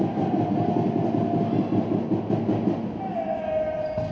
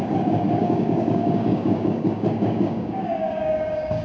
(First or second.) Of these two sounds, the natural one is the first